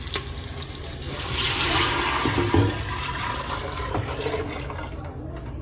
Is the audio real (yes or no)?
yes